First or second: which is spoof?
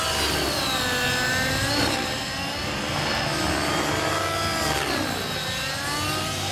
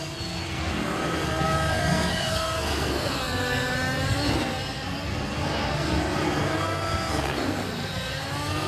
second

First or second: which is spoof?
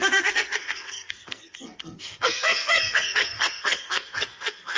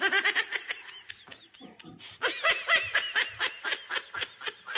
first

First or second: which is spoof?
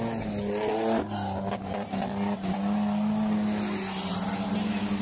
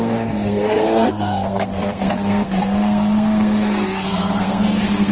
second